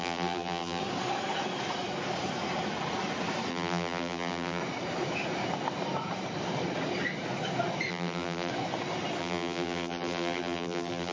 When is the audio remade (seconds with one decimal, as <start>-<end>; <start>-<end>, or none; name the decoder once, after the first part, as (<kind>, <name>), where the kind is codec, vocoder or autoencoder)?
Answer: 0.0-0.8 (vocoder, BigVGAN v2); 3.5-4.6; 7.9-8.5; 9.2-11.1